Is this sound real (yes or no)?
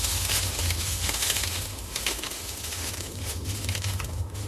no